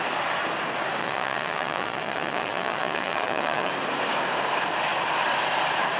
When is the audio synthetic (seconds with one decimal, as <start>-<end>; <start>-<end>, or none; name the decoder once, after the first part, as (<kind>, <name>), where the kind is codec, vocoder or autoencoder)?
1.0-3.7 (vocoder, Vocos)